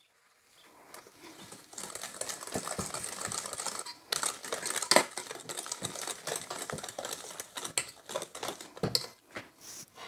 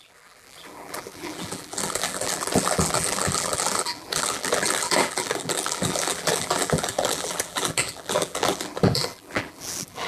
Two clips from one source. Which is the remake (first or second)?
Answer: second